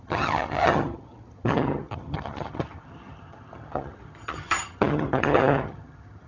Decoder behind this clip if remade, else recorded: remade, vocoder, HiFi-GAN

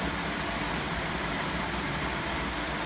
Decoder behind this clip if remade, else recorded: remade, vocoder, BigVGAN v2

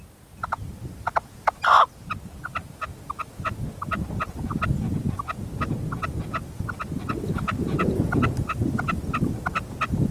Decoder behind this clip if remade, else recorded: recorded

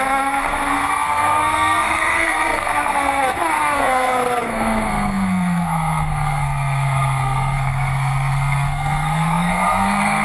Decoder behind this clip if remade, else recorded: remade, codec, SNAC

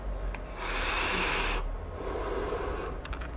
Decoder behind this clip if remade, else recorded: recorded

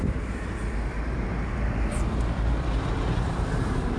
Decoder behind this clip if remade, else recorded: remade, vocoder, BigVGAN v2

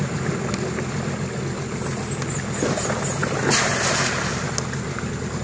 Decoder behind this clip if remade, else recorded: recorded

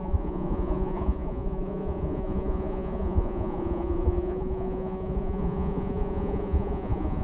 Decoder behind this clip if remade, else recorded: remade, vocoder, Vocos